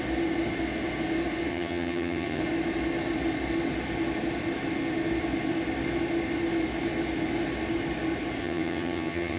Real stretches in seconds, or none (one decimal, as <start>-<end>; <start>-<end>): 0.0-1.5; 2.4-8.4